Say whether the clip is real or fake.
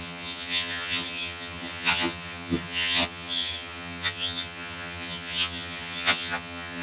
fake